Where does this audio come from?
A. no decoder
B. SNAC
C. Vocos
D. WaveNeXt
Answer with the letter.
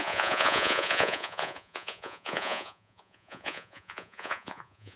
C